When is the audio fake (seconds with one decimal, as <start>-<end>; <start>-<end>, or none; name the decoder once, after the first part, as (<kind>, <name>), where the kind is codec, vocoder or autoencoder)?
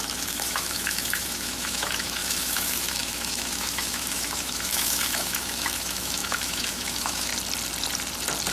0.0-7.3 (autoencoder, DAC-VAE)